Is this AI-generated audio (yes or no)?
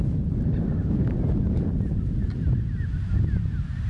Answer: no